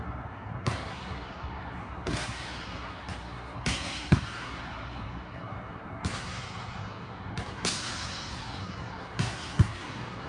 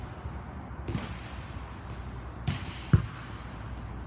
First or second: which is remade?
first